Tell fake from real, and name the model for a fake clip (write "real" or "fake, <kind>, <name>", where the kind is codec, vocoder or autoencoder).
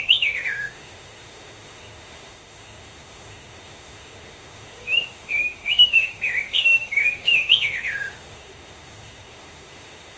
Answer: fake, autoencoder, DAC-VAE